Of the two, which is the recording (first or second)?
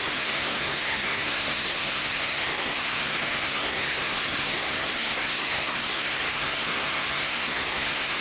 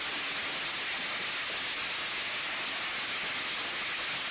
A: second